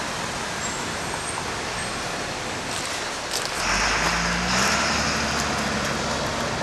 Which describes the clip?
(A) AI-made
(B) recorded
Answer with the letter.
B